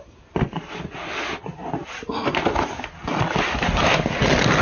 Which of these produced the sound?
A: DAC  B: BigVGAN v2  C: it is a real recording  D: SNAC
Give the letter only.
C